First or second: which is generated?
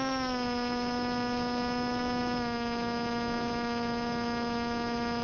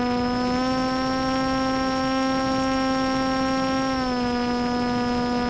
first